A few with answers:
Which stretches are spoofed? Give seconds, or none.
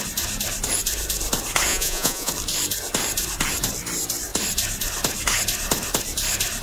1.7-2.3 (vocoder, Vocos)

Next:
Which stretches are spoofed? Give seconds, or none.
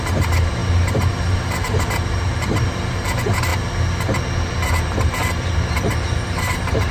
0.0-3.5 (vocoder, BigVGAN v2); 5.0-6.9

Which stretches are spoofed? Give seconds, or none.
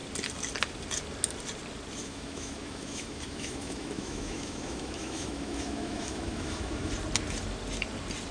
2.0-6.9 (autoencoder, DAC-VAE)